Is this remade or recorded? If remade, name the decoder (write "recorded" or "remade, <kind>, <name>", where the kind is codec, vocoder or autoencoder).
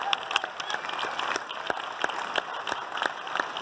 recorded